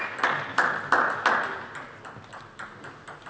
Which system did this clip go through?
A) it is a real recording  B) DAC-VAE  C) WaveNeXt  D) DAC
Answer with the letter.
A